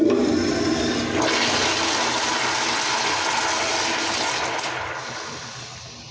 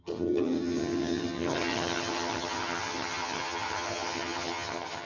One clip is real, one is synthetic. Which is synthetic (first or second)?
second